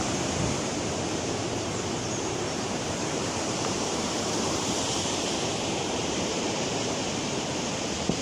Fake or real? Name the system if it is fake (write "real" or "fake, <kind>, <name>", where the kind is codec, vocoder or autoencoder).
fake, vocoder, BigVGAN v2